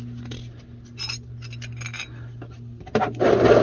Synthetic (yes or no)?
no